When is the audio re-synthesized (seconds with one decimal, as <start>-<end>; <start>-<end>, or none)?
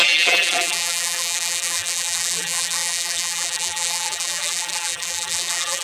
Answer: 0.0-5.8